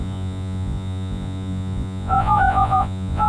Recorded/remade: remade